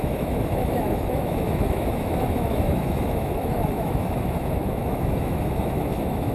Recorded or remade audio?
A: remade